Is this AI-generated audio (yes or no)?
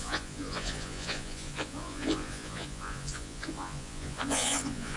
yes